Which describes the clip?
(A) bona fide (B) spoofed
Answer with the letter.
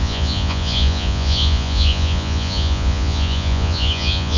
B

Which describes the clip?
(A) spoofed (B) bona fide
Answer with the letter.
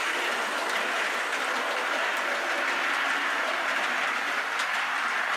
B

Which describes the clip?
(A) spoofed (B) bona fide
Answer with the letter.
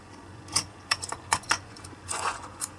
A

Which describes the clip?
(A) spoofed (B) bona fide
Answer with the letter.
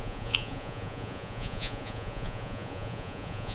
A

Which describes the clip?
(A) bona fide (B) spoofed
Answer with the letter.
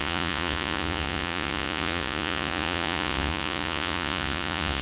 B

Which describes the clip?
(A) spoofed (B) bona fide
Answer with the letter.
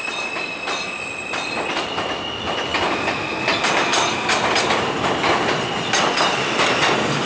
B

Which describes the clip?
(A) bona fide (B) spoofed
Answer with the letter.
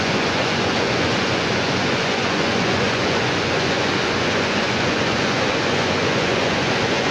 B